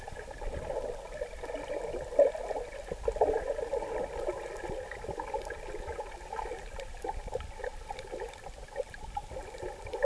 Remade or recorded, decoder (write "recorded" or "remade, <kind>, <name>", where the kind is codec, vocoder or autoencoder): recorded